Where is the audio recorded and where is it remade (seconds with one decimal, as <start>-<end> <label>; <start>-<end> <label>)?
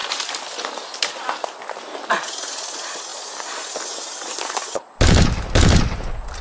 0.0-6.4 recorded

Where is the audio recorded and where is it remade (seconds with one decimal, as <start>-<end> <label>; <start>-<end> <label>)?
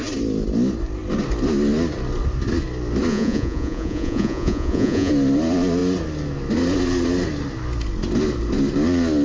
0.0-3.1 recorded; 3.1-5.1 remade; 5.1-9.2 recorded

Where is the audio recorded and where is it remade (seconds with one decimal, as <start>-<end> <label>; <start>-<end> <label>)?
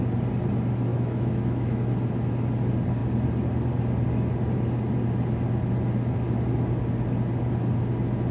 0.0-0.9 recorded; 0.9-1.9 remade; 1.9-8.3 recorded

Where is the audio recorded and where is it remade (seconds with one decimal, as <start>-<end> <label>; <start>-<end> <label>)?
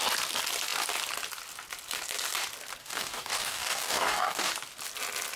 0.0-2.8 recorded; 2.8-4.5 remade; 4.5-5.4 recorded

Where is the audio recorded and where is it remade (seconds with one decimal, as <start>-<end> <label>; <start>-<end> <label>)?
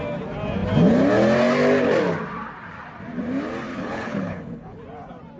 0.0-3.7 recorded; 3.7-4.8 remade; 4.8-5.4 recorded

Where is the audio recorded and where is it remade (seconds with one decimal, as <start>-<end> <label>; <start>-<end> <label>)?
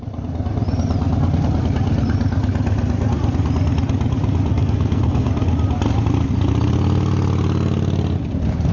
0.0-4.5 recorded; 4.5-5.3 remade; 5.3-8.7 recorded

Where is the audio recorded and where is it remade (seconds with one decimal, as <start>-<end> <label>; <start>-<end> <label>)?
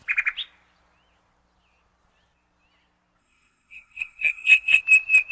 0.0-3.2 recorded; 3.2-4.8 remade; 4.8-5.3 recorded